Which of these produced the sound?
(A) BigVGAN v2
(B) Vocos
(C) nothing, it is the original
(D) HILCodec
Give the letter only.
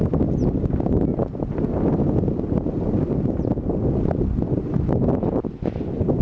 C